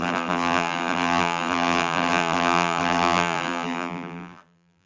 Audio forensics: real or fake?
fake